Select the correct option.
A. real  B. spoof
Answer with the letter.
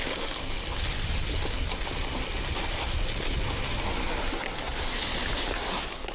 A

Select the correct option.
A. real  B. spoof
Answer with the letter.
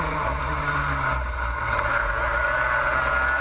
A